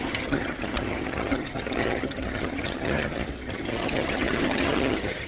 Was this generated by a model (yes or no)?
yes